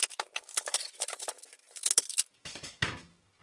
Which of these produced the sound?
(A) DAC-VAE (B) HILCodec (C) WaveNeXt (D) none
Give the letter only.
A